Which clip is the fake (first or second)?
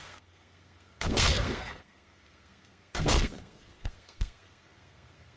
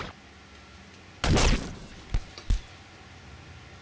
first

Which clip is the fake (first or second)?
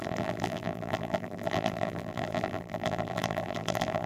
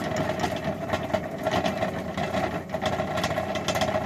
first